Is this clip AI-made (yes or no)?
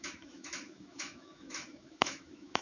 yes